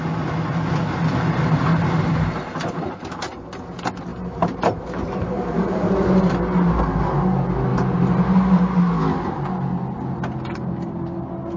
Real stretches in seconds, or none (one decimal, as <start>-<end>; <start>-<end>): 0.0-1.7; 2.9-4.1; 7.0-11.6

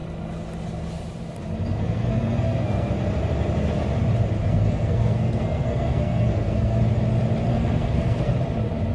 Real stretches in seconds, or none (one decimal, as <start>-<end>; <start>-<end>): 0.0-1.7; 2.9-4.4; 6.8-7.5; 8.3-8.9

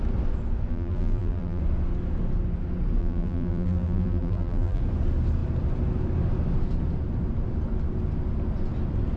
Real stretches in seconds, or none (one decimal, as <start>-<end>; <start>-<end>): 0.0-0.7; 1.6-3.0; 4.8-9.2

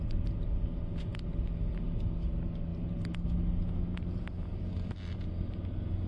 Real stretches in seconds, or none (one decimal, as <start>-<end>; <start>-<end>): 0.0-6.1

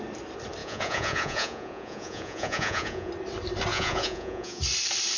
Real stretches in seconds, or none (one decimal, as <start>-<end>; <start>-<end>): 0.0-0.6; 3.1-3.7; 4.6-5.2

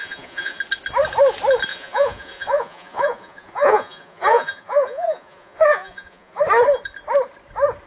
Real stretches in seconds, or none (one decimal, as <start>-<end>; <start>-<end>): 0.6-1.7; 6.4-7.9

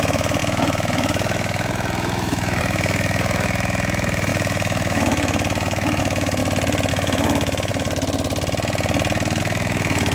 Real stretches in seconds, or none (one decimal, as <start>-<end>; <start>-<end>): 6.4-6.9; 7.7-9.4